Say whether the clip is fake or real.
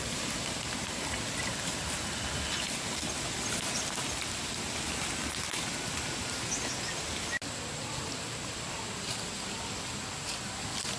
real